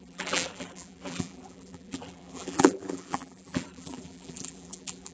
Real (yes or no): no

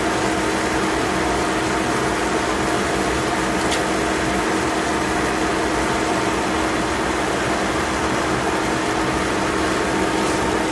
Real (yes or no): yes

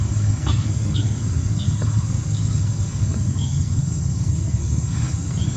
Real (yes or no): no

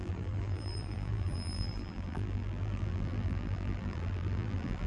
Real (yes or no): no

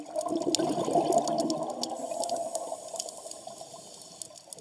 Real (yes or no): yes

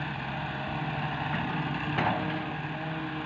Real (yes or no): yes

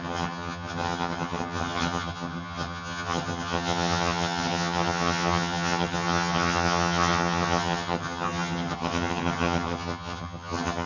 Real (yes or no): no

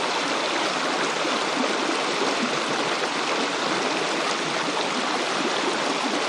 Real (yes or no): yes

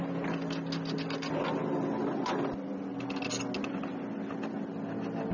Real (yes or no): yes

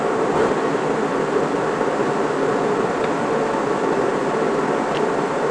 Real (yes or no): yes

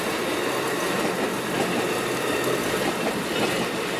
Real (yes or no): yes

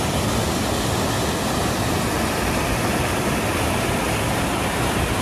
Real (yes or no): yes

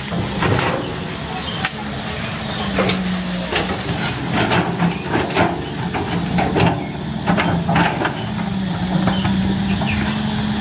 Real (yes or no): yes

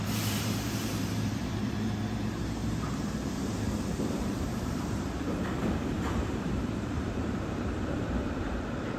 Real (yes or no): no